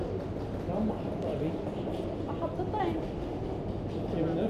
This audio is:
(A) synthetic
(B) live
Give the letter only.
B